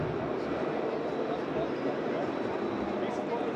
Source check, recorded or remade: recorded